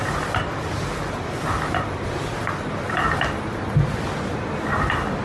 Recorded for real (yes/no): yes